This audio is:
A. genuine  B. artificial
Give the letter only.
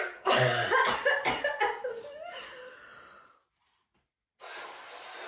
A